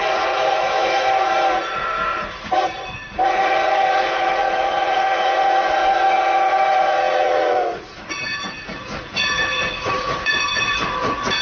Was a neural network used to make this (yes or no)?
yes